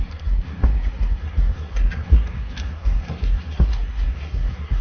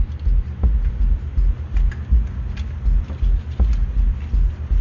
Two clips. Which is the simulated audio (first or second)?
first